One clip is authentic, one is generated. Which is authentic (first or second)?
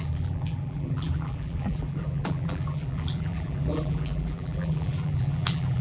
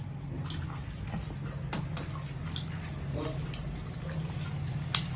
second